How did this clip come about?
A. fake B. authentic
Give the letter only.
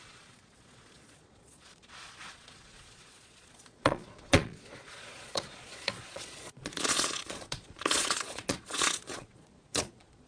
A